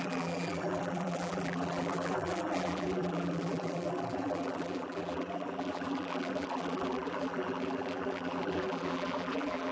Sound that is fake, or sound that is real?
fake